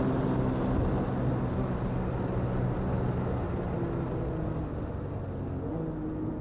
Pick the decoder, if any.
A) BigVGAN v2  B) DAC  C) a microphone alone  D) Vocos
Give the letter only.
C